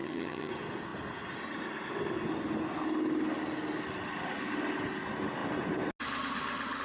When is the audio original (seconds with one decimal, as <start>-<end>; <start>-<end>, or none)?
0.5-6.8